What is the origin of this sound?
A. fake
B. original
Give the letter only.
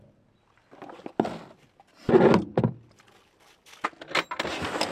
B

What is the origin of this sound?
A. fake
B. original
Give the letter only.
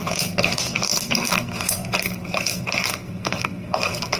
A